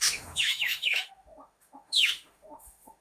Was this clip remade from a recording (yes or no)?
yes